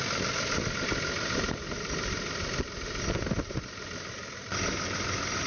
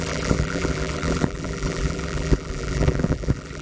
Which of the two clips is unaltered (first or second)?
first